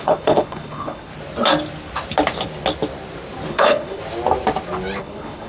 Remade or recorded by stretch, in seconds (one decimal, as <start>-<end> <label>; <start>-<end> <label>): 0.0-1.1 remade; 1.1-3.5 recorded; 3.5-4.0 remade; 4.0-5.0 recorded; 5.0-5.5 remade